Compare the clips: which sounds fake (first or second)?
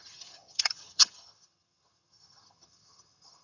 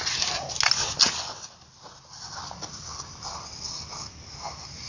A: first